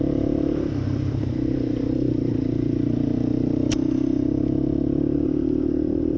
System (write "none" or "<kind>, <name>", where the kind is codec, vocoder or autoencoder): vocoder, BigVGAN v2